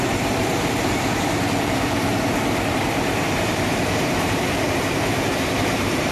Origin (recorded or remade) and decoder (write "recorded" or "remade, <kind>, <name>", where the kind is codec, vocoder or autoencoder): remade, vocoder, BigVGAN v2